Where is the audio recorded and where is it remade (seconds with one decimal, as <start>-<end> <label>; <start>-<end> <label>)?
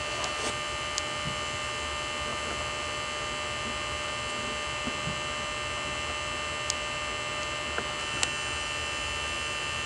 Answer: 0.0-9.9 recorded